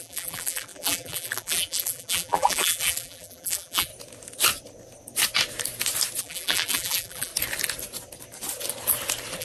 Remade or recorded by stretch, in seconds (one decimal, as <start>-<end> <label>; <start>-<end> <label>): 0.0-3.9 remade; 3.9-6.2 recorded; 6.2-7.3 remade; 7.3-9.4 recorded